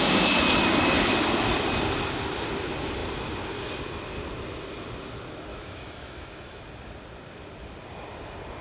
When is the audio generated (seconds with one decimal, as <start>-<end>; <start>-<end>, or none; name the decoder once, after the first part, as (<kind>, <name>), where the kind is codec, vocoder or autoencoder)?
5.5-6.6 (autoencoder, DAC-VAE)